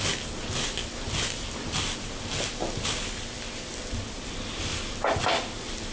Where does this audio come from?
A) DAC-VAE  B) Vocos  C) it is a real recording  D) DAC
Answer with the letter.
C